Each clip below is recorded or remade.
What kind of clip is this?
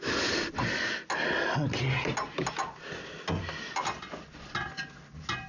recorded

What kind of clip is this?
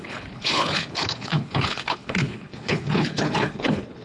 remade